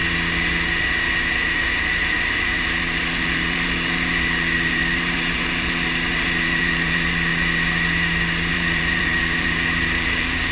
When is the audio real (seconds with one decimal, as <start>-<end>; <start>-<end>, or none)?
0.0-2.1; 7.3-8.5